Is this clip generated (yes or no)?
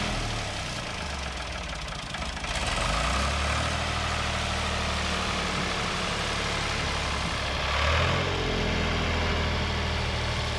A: no